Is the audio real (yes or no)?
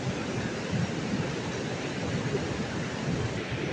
yes